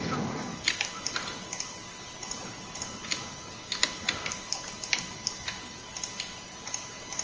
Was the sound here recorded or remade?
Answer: recorded